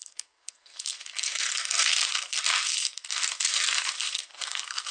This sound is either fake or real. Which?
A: fake